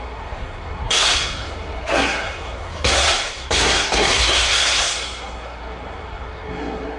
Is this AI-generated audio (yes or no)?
yes